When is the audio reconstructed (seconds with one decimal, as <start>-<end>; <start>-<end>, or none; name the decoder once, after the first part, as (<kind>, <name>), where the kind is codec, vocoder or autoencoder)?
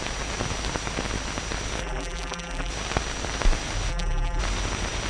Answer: 1.8-2.7 (vocoder, BigVGAN v2); 3.9-4.4